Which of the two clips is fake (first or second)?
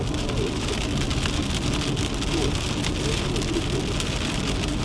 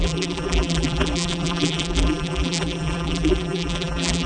second